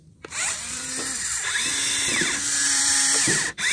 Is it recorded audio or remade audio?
remade